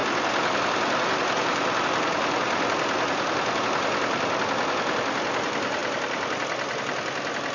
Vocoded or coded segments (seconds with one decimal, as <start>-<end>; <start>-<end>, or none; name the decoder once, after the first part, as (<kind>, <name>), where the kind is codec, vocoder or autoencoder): none